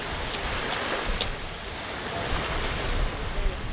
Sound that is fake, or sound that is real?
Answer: real